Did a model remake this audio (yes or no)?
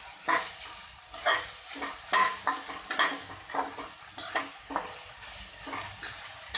no